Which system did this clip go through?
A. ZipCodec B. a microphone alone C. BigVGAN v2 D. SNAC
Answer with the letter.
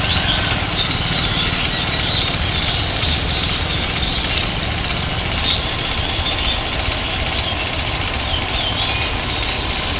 B